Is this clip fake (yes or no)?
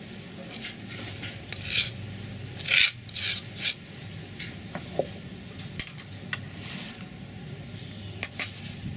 no